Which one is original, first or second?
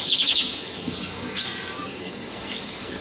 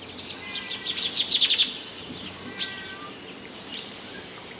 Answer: second